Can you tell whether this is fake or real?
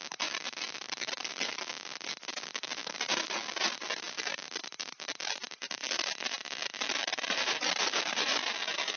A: fake